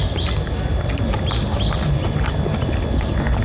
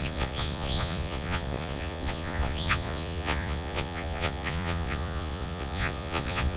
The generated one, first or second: second